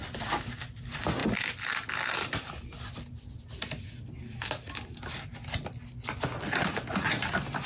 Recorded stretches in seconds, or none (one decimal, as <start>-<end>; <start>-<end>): 0.0-7.7